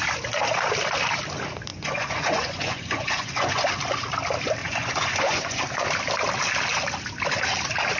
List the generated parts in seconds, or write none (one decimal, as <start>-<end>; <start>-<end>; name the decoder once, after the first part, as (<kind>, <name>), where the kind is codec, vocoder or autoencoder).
1.7-3.7 (vocoder, Vocos); 4.6-5.6